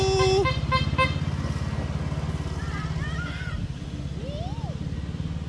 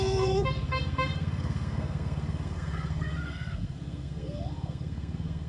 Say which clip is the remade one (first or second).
second